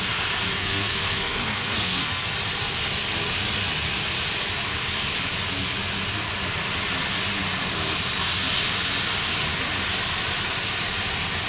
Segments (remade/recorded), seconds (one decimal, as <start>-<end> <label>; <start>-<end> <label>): 0.0-0.6 recorded; 0.6-2.3 remade; 2.3-11.5 recorded